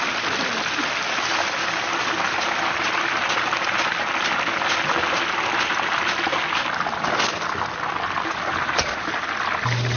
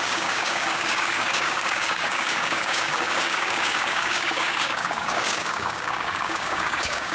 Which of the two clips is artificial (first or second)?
second